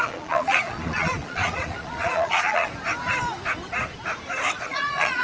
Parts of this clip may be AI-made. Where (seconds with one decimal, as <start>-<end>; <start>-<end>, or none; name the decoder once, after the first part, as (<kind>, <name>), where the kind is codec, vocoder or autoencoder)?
0.0-2.7 (vocoder, Vocos); 4.6-5.2